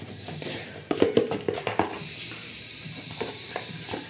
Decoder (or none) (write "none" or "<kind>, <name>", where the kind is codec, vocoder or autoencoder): vocoder, BigVGAN v2